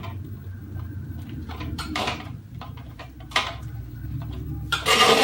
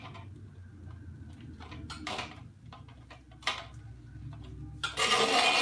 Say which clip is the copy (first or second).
first